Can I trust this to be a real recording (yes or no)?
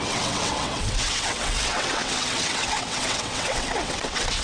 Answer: no